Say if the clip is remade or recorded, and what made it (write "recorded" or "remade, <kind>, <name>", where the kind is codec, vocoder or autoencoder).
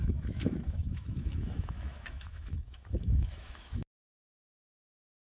remade, autoencoder, DAC-VAE